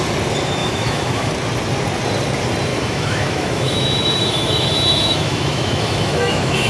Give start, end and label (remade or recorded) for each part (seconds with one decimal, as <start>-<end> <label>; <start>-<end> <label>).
0.0-0.6 recorded; 0.6-1.3 remade; 1.3-2.7 recorded; 2.7-6.7 remade